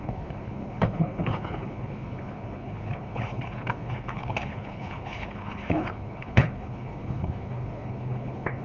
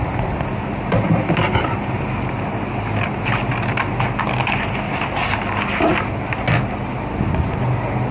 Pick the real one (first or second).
second